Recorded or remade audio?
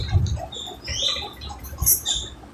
recorded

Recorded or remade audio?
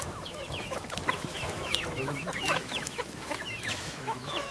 remade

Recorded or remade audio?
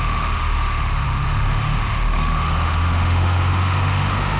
remade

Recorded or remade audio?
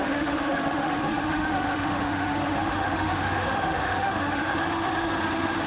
remade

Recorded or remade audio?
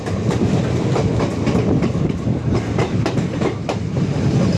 recorded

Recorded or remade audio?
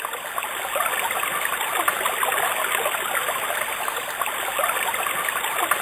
recorded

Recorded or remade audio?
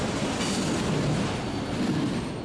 recorded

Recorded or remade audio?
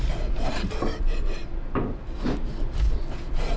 recorded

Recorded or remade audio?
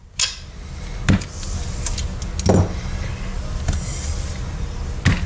recorded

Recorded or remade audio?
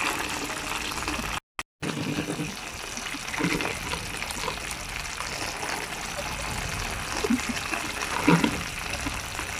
recorded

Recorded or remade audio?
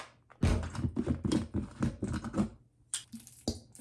recorded